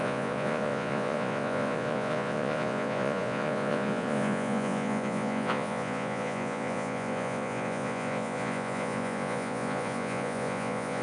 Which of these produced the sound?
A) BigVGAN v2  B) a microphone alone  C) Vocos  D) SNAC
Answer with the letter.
C